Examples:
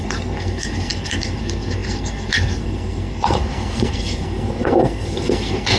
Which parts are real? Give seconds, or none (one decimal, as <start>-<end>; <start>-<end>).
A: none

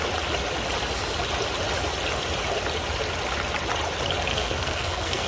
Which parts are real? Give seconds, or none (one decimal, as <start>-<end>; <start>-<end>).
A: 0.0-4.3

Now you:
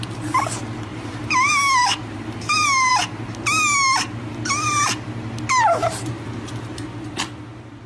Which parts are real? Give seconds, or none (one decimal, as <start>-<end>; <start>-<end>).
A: 0.0-0.9; 1.5-2.0; 2.9-7.9

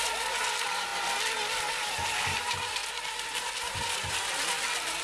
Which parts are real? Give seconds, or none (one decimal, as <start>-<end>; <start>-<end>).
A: 0.0-5.0